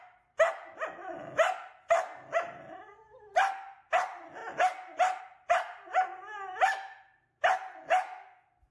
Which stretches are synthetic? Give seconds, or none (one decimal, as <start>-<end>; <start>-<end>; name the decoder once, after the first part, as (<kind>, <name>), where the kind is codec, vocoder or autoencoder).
none

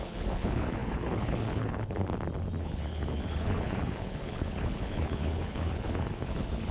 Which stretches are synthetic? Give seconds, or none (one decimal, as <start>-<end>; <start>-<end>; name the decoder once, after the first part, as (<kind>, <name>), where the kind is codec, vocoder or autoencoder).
0.0-2.0 (codec, HILCodec); 2.6-6.7